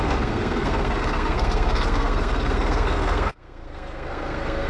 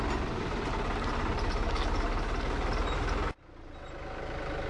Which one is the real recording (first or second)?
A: second